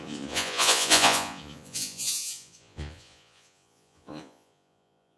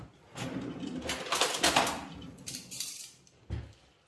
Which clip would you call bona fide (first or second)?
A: second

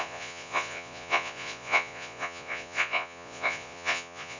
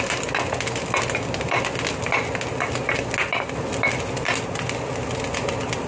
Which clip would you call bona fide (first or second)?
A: second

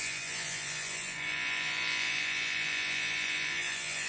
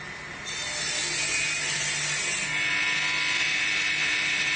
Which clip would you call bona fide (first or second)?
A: second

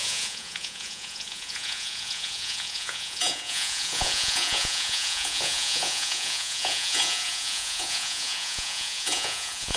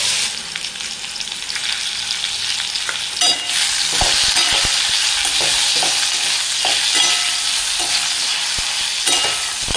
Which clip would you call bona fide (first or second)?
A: second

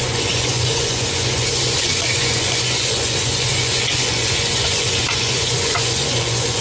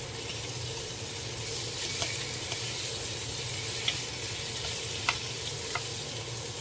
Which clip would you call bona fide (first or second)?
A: second